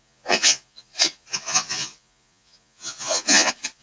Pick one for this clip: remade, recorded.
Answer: remade